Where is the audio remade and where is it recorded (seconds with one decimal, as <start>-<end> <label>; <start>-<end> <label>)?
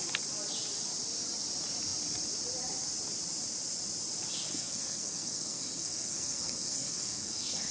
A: 0.0-4.5 recorded; 4.5-7.7 remade